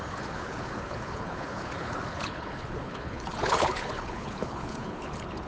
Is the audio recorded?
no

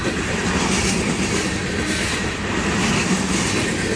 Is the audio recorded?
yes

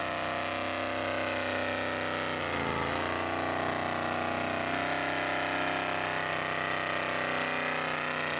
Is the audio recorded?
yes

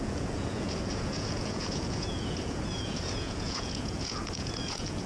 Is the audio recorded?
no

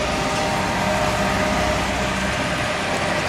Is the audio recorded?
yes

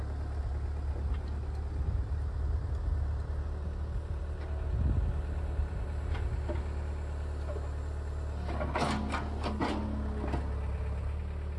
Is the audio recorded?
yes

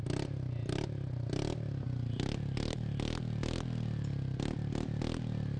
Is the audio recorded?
yes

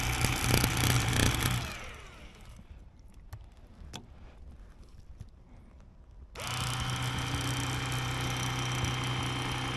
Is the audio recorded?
yes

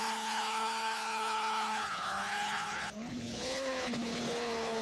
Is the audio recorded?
no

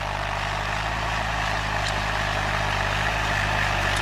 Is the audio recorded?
no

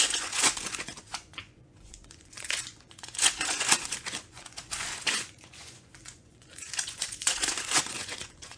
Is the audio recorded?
no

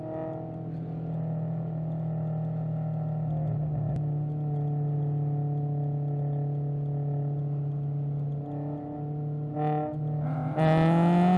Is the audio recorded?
yes